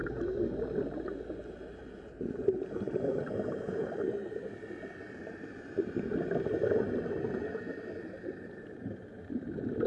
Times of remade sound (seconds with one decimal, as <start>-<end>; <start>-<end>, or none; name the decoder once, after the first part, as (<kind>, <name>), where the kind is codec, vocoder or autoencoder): 1.3-9.9 (vocoder, BigVGAN v2)